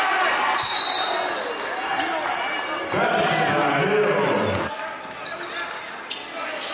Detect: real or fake real